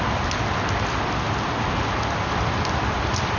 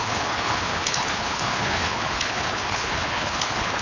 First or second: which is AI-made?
second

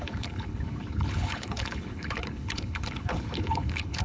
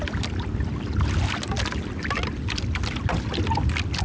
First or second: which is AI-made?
first